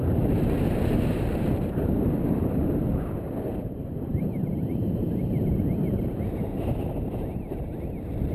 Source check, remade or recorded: remade